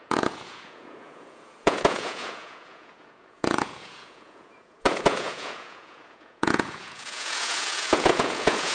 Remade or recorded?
remade